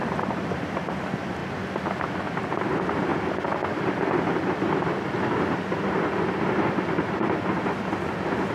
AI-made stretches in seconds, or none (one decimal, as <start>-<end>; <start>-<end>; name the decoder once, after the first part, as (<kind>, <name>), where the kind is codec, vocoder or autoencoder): 0.0-1.4 (vocoder, BigVGAN v2); 2.4-3.1; 6.8-8.5

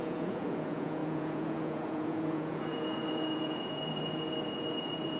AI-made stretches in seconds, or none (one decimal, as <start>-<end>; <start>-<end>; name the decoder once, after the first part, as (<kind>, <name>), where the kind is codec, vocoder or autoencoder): 0.0-5.2 (vocoder, Vocos)

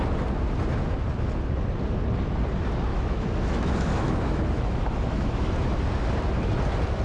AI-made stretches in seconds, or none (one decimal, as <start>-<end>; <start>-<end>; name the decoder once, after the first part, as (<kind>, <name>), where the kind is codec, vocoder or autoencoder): 2.9-5.5 (autoencoder, DAC-VAE)

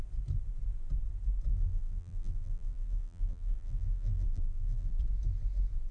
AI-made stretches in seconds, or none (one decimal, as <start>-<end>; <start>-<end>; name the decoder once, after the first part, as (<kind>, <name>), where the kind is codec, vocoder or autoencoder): 1.5-5.0 (vocoder, BigVGAN v2)

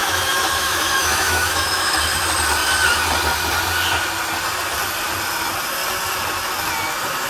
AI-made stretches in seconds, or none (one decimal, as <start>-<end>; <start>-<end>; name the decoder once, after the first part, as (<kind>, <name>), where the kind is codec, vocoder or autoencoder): 0.0-2.0 (autoencoder, DAC-VAE)

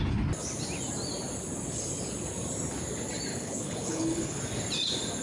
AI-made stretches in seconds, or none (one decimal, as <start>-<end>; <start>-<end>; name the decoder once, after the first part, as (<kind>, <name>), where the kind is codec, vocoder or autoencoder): 3.3-4.4 (codec, HILCodec)

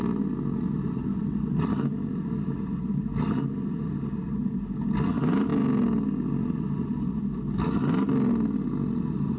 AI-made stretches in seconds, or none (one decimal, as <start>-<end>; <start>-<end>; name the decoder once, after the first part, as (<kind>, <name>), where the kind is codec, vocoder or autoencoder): none